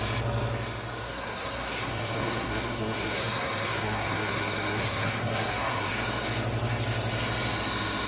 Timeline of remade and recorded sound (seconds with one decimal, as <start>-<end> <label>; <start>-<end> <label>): 0.0-1.0 recorded; 1.0-5.9 remade; 5.9-8.1 recorded